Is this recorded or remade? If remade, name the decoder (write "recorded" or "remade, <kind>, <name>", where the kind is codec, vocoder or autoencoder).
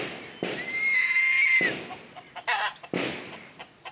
recorded